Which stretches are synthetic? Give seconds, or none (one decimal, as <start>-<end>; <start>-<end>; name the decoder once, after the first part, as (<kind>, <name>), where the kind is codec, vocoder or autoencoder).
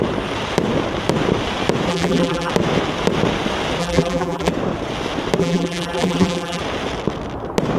1.9-2.5 (vocoder, BigVGAN v2); 3.8-4.5; 5.4-6.6